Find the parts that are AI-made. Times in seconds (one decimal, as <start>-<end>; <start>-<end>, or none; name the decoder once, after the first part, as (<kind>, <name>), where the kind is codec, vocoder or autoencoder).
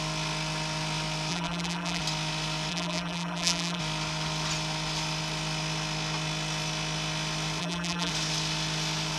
1.3-2.0 (vocoder, BigVGAN v2); 2.7-3.8; 7.6-8.1